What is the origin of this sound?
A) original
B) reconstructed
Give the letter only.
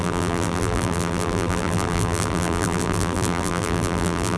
B